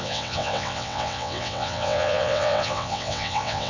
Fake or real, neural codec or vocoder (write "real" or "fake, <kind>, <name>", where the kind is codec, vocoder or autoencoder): fake, vocoder, WaveNeXt